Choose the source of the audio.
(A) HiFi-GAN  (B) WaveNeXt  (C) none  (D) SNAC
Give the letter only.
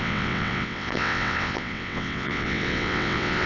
B